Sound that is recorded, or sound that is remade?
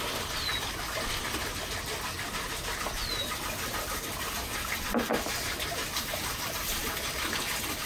recorded